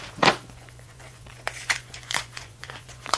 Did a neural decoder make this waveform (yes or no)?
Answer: yes